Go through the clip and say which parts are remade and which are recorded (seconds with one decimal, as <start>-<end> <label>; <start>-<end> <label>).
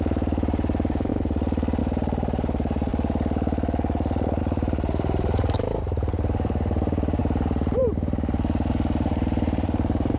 0.0-1.1 remade; 1.1-1.8 recorded; 1.8-2.9 remade; 2.9-4.4 recorded; 4.4-10.2 remade